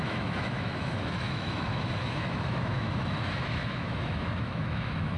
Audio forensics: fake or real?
fake